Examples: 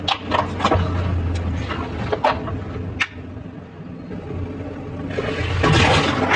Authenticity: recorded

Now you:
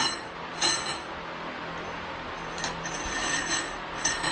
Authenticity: recorded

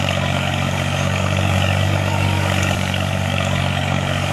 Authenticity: remade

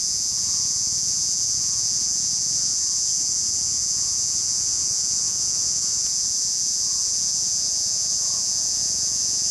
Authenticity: remade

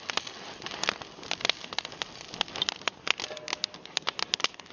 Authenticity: recorded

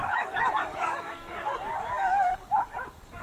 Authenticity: remade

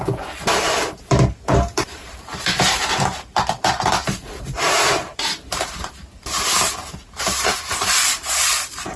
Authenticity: remade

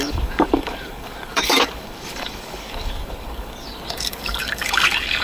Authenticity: remade